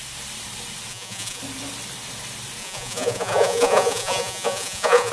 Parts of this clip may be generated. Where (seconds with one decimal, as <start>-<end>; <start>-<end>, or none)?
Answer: 0.9-1.4; 2.6-5.1